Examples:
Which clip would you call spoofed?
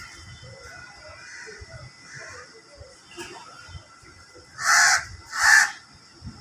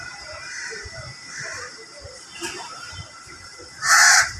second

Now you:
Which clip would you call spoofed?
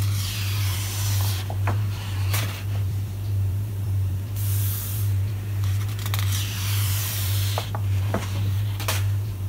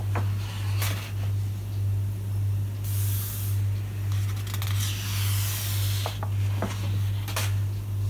first